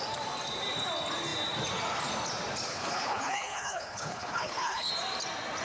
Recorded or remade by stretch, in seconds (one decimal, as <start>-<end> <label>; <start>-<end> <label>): 0.0-2.7 recorded; 2.7-4.9 remade; 4.9-5.6 recorded